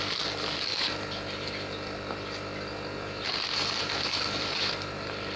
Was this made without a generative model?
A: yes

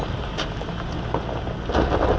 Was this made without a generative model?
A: yes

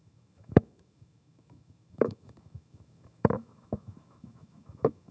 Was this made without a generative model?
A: no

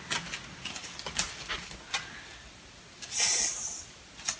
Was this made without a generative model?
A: yes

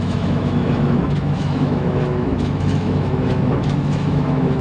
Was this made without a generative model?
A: no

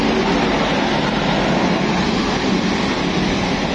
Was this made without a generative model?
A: yes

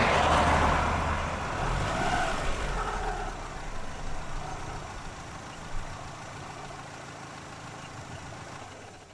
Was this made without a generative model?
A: yes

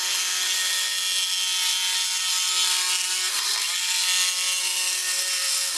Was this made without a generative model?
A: yes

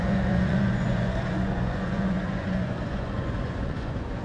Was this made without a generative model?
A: no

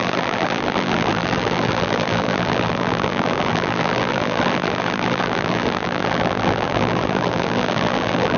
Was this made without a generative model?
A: no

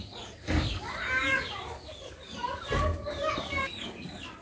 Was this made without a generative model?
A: no